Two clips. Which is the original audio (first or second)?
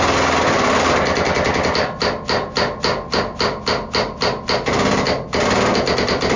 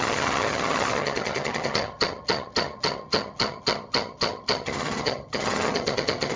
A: first